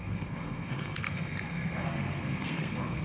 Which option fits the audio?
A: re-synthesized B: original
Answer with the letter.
A